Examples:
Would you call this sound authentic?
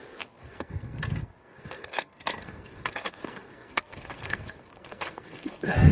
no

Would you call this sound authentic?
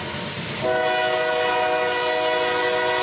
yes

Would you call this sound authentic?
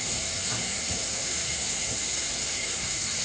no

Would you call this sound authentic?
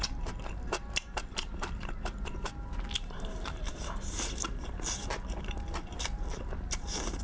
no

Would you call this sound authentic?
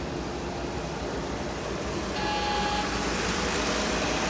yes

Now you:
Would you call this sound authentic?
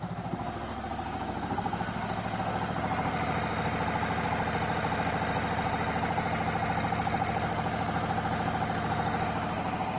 yes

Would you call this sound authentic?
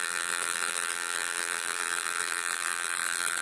no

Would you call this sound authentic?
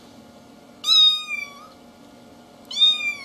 yes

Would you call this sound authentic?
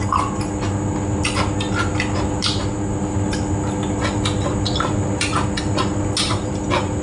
yes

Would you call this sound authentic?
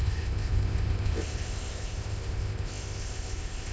no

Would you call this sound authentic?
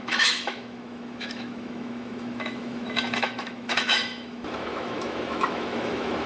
no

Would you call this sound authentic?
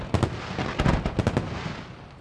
yes